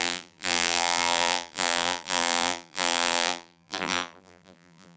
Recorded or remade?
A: remade